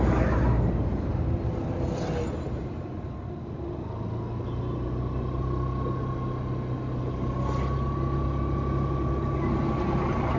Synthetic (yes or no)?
no